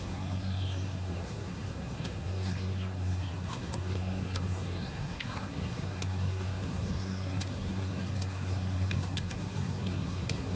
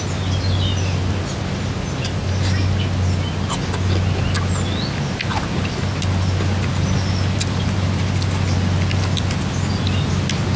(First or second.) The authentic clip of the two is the second